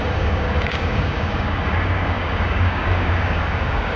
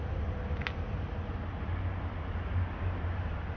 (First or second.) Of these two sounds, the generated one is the first